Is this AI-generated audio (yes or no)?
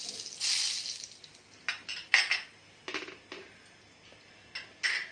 no